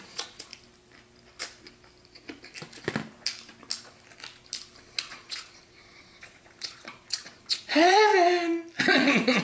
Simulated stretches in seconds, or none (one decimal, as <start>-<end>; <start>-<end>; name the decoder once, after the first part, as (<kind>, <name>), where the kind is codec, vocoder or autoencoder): 0.0-0.5 (vocoder, Vocos); 5.0-8.1; 8.8-9.4